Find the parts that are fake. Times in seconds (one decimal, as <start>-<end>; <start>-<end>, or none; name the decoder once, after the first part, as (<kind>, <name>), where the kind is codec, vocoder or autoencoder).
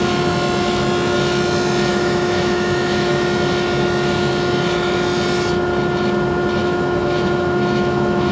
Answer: 1.9-3.1 (autoencoder, DAC-VAE); 6.6-8.3